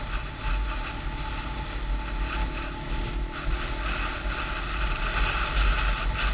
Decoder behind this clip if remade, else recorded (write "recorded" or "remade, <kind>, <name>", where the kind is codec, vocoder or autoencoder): recorded